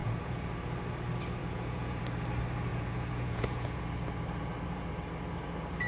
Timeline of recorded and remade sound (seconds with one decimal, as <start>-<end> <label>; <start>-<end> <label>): 0.0-0.5 remade; 0.5-1.4 recorded; 1.4-2.0 remade; 2.0-2.7 recorded; 2.7-3.8 remade; 3.8-5.9 recorded